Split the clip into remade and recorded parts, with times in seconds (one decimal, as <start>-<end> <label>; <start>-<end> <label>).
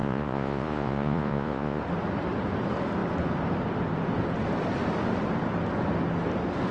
0.0-1.8 remade; 1.8-6.7 recorded